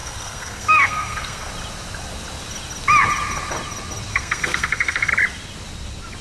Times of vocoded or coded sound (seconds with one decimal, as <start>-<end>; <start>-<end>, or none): 0.0-1.5; 4.1-5.1